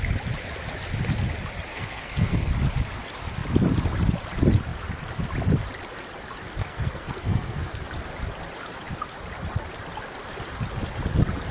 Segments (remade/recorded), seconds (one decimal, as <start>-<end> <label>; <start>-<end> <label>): 0.0-1.7 recorded; 1.7-2.5 remade; 2.5-6.6 recorded; 6.6-7.8 remade; 7.8-11.5 recorded